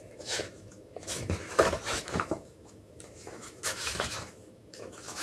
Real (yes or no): no